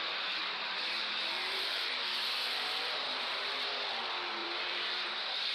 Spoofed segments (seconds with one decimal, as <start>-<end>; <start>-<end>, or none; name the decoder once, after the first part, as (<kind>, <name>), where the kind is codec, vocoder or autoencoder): 0.4-3.7 (vocoder, BigVGAN v2); 4.4-5.5